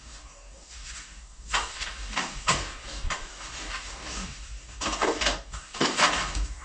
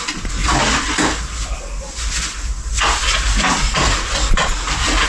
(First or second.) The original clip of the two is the second